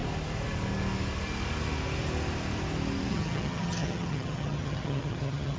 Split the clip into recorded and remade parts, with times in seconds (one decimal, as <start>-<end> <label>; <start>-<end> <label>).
0.0-3.1 recorded; 3.1-5.6 remade